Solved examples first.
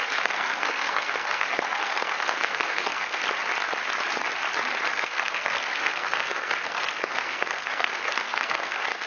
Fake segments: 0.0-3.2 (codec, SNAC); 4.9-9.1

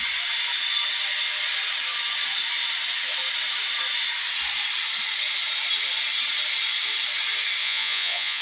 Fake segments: 7.6-8.4 (vocoder, Vocos)

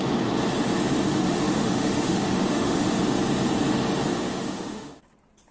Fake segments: 1.1-3.0 (autoencoder, DAC-VAE); 4.3-5.0